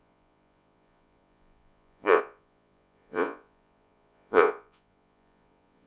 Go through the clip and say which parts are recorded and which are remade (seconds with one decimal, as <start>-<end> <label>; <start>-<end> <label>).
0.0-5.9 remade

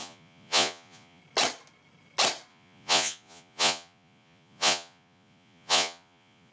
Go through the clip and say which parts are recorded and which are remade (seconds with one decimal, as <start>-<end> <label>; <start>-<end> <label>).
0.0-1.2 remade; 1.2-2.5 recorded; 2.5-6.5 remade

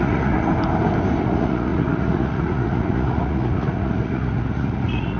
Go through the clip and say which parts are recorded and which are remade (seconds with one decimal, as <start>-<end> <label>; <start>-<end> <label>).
0.0-0.5 remade; 0.5-1.2 recorded; 1.2-5.2 remade